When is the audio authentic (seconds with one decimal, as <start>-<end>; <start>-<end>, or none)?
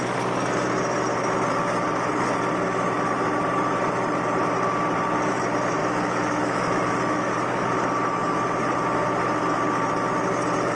0.0-5.8; 7.3-10.7